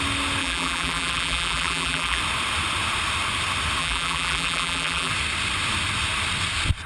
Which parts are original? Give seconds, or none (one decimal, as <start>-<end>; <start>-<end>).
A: 0.0-0.4; 2.2-3.8; 5.1-6.9